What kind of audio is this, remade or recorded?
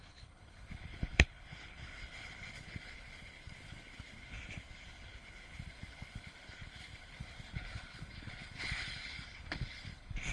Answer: remade